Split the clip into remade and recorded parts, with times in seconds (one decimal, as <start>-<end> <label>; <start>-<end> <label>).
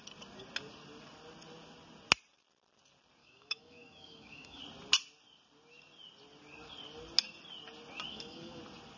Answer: 0.0-3.2 recorded; 3.2-4.6 remade; 4.6-8.1 recorded; 8.1-8.6 remade; 8.6-9.0 recorded